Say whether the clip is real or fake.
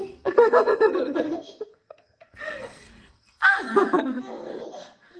fake